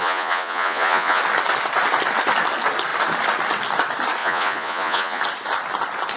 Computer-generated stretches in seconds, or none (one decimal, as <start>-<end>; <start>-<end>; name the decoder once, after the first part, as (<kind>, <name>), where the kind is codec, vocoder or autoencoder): 0.0-1.2 (vocoder, Vocos); 4.2-5.2

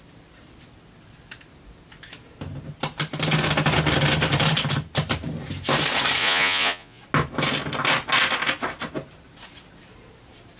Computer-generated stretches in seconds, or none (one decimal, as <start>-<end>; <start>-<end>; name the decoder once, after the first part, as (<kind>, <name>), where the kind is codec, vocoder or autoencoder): 6.2-7.0 (vocoder, Vocos)